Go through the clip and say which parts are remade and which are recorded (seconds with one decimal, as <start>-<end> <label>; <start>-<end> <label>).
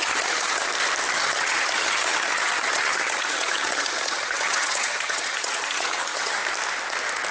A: 0.0-0.6 remade; 0.6-1.1 recorded; 1.1-6.4 remade; 6.4-7.3 recorded